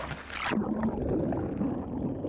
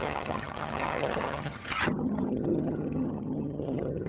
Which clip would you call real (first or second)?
first